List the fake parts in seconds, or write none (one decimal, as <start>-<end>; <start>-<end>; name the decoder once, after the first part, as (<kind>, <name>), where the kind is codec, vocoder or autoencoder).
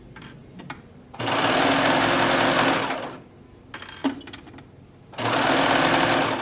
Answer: none